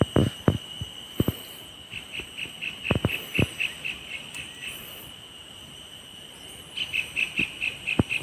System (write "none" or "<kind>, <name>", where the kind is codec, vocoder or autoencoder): none